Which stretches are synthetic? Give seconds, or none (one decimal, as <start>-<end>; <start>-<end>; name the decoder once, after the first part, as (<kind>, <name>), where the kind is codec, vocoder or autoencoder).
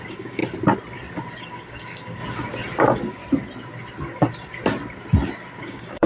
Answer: 0.0-0.4 (codec, DAC); 1.4-2.2; 2.8-3.2; 5.6-6.1